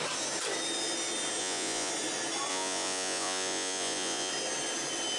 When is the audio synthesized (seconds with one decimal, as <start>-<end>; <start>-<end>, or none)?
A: 1.4-1.9; 2.5-4.3